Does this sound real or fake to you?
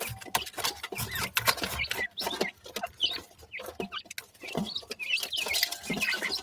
real